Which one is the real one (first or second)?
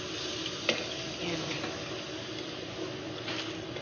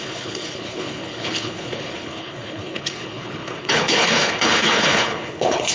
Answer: first